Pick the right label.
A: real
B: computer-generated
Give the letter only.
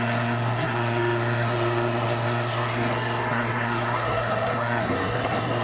B